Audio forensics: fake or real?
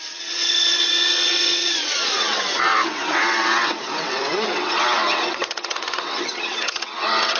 fake